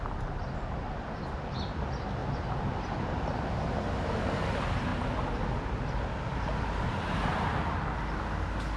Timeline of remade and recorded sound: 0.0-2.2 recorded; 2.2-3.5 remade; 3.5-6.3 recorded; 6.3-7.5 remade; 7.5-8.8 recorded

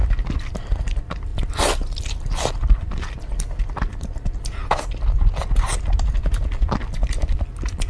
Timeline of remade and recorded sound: 0.0-7.9 recorded

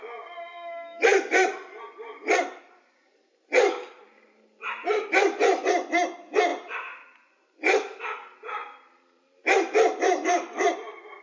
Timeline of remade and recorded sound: 0.0-1.1 recorded; 1.1-2.6 remade; 2.6-6.5 recorded; 6.5-8.0 remade; 8.0-8.6 recorded; 8.6-11.2 remade